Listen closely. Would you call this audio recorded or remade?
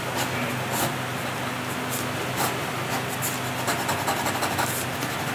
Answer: recorded